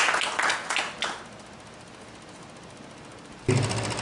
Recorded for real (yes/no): yes